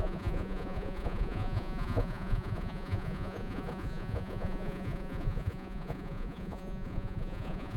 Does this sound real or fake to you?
fake